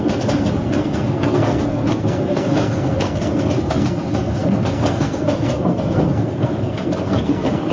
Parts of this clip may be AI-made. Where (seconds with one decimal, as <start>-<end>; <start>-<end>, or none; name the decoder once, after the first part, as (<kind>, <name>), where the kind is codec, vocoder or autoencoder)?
0.0-7.7 (codec, SNAC)